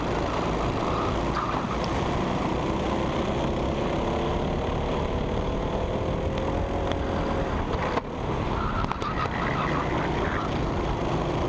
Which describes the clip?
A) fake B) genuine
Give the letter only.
B